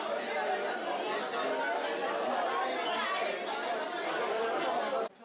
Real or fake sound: real